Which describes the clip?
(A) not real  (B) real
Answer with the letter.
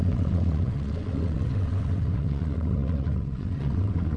A